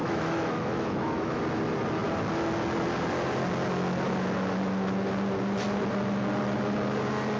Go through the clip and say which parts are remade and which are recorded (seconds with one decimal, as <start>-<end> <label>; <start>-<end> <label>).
0.0-1.4 remade; 1.4-7.4 recorded